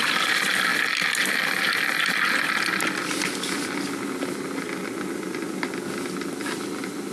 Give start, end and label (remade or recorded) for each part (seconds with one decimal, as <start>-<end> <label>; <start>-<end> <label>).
0.0-7.1 recorded